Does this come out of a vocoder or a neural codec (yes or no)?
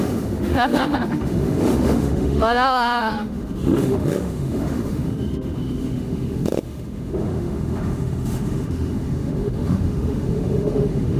yes